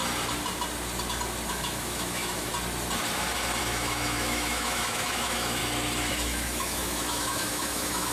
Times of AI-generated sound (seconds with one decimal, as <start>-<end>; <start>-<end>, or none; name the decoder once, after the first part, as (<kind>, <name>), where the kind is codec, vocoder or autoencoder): 1.5-2.5 (autoencoder, DAC-VAE); 3.6-5.6; 6.1-8.1